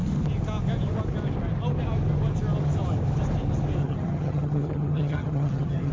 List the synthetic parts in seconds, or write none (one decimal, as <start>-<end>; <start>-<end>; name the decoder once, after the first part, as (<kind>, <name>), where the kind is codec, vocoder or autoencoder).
3.8-5.9 (vocoder, HiFi-GAN)